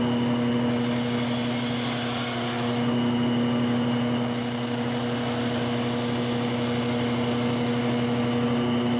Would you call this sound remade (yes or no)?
no